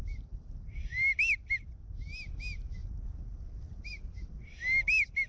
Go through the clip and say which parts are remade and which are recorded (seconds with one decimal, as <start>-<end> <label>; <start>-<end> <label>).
0.0-5.3 recorded